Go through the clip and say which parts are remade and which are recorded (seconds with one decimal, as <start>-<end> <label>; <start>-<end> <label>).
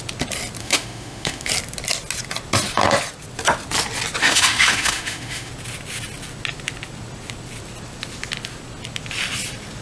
0.0-0.6 recorded; 0.6-1.5 remade; 1.5-4.2 recorded; 4.2-5.5 remade; 5.5-9.8 recorded